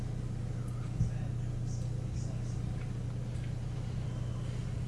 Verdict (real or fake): real